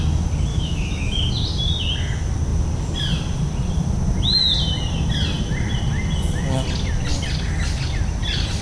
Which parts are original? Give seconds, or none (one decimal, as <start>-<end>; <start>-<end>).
0.0-0.5; 1.3-8.6